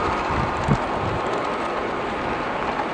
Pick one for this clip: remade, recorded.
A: recorded